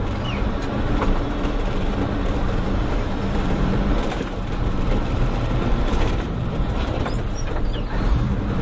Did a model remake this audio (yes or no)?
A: yes